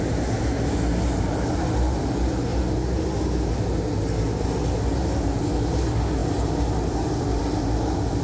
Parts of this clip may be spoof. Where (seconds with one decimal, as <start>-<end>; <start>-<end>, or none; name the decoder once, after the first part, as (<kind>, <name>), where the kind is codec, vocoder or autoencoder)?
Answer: 6.2-7.4 (vocoder, BigVGAN v2)